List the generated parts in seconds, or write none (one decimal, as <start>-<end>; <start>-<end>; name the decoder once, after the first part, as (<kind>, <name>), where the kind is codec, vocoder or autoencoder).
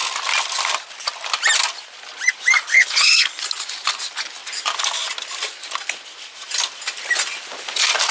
2.7-3.3 (codec, HILCodec)